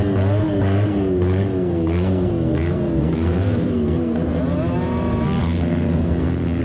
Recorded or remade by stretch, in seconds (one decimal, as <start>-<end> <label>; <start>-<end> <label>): 0.0-0.4 recorded; 0.4-4.4 remade; 4.4-5.4 recorded; 5.4-6.6 remade